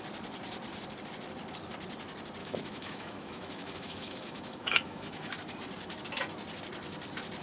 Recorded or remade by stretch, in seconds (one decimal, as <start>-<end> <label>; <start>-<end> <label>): 0.0-2.4 recorded; 2.4-5.3 remade; 5.3-7.4 recorded